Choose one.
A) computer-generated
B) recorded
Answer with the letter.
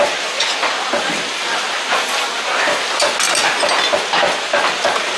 B